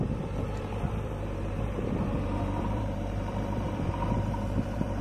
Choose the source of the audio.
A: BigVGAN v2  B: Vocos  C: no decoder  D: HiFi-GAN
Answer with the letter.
A